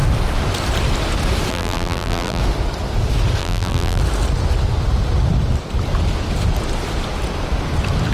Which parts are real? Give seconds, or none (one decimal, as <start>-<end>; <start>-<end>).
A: 0.0-1.5; 2.4-3.4; 4.0-8.1